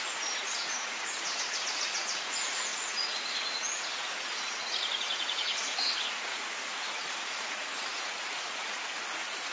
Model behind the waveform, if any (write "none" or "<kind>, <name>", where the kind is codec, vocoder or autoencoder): vocoder, Vocos